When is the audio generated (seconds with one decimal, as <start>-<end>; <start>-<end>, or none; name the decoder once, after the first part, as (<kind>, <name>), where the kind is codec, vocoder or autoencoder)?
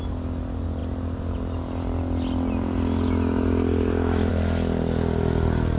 none